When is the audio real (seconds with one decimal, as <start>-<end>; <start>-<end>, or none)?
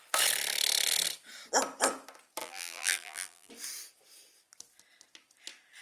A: 0.0-2.4; 3.5-5.8